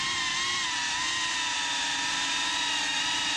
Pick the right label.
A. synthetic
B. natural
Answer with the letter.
A